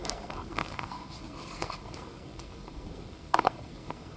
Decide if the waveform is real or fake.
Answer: fake